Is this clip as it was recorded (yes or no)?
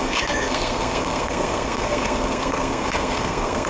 no